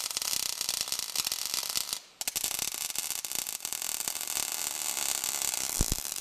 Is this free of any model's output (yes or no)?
yes